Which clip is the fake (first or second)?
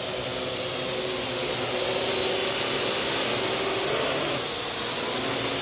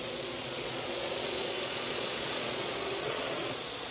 second